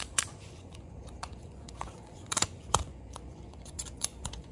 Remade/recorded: remade